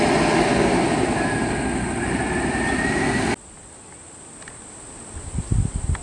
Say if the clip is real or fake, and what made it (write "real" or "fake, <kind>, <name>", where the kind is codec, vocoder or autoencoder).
real